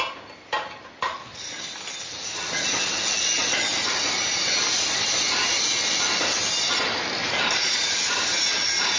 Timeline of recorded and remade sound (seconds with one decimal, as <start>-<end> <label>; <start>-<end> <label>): 0.0-3.7 recorded; 3.7-5.7 remade; 5.7-7.2 recorded; 7.2-8.4 remade; 8.4-9.0 recorded